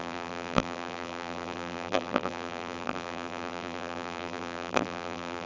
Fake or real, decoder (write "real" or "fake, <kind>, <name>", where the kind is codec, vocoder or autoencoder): fake, vocoder, BigVGAN v2